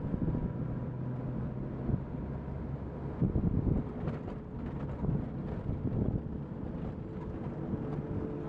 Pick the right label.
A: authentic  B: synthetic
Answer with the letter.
A